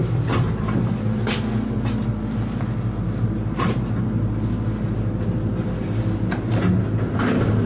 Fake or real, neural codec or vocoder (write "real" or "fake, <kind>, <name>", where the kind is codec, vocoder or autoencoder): real